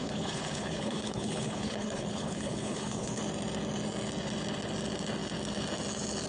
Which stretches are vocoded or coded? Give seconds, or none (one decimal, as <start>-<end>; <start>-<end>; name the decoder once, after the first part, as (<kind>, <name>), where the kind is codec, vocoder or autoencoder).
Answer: 0.0-3.2 (codec, HILCodec)